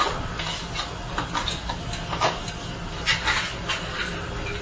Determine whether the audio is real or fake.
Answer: real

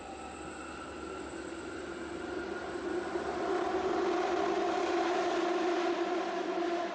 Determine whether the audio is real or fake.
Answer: real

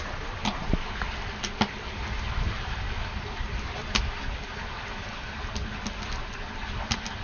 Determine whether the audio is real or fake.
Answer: real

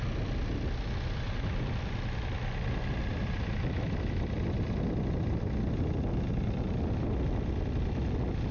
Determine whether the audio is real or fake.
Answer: real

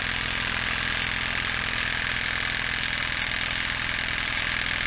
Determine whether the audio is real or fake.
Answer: real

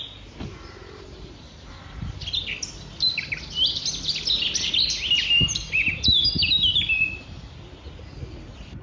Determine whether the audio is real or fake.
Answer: real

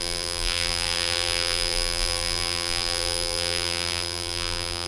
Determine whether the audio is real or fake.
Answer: fake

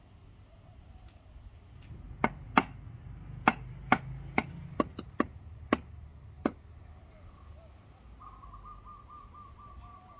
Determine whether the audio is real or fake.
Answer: real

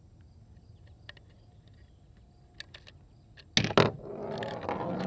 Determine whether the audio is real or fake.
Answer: real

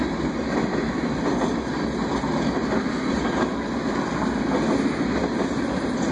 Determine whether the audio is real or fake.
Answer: real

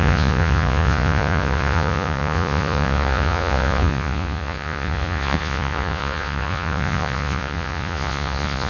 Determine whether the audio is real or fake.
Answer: fake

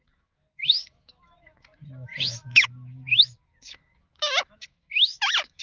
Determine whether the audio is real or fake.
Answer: fake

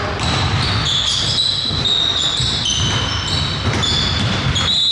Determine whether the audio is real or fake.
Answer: real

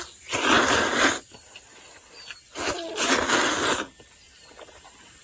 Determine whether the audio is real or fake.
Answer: real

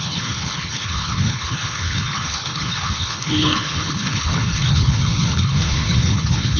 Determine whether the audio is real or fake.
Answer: fake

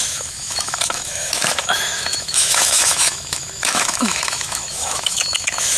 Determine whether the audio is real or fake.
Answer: fake